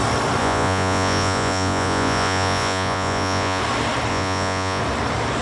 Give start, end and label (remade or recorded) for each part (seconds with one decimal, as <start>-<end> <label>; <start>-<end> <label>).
0.0-0.4 recorded; 0.4-3.6 remade; 3.6-4.1 recorded; 4.1-4.8 remade; 4.8-5.4 recorded